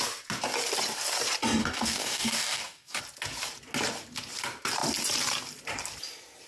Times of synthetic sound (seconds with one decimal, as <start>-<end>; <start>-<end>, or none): 1.6-3.0